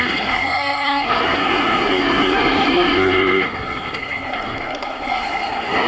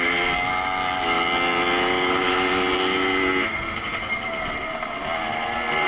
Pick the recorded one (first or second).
second